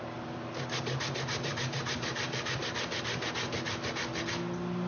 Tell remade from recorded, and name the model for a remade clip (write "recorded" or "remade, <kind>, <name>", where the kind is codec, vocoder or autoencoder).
recorded